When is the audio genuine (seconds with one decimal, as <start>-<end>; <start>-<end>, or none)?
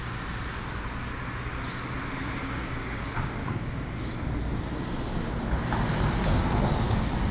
0.0-2.4; 3.0-3.4; 4.1-7.3